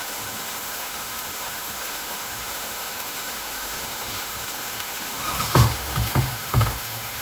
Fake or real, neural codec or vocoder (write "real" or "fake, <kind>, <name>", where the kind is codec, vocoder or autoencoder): fake, autoencoder, DAC-VAE